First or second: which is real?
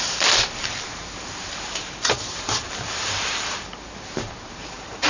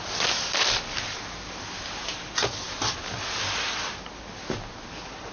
second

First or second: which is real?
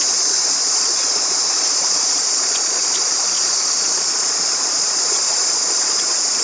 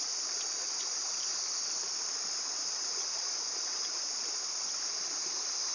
second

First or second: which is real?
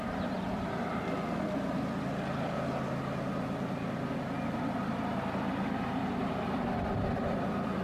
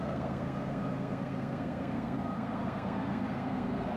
first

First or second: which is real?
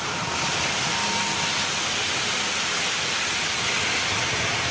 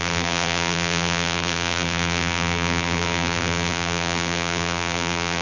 first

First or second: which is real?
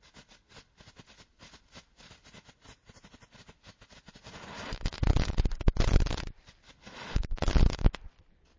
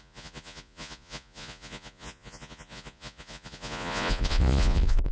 first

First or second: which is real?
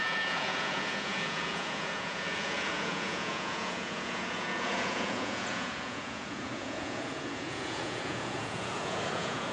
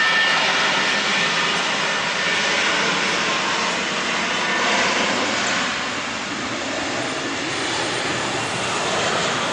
second